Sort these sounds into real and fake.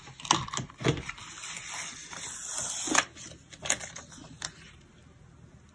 real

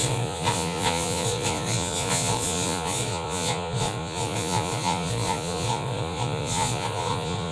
fake